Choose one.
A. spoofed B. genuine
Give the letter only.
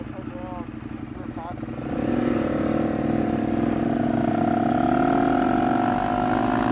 B